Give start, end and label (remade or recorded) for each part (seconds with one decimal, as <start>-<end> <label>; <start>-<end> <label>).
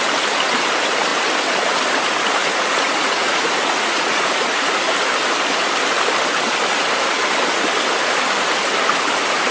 0.0-2.4 recorded; 2.4-4.9 remade; 4.9-9.5 recorded